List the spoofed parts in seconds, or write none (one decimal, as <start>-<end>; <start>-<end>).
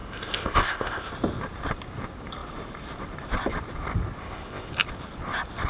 0.0-1.1; 4.2-4.7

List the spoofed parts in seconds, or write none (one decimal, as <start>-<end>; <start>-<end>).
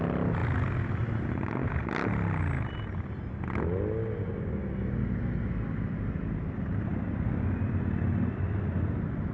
none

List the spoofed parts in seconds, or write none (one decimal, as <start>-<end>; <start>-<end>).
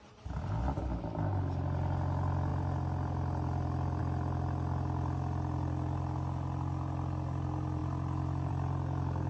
none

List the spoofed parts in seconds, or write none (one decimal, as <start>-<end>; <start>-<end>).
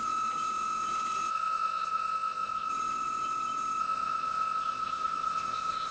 1.3-2.7; 3.8-5.9